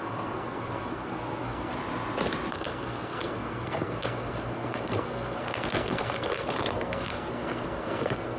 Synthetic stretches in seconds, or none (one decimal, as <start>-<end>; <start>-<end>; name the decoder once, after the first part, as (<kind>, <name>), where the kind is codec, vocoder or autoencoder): 0.0-1.7 (codec, SNAC); 2.5-8.4